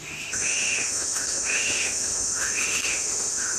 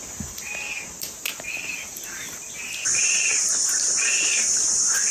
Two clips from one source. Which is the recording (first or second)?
second